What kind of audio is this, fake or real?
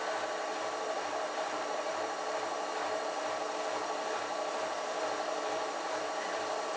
fake